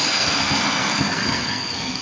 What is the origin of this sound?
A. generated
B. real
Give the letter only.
A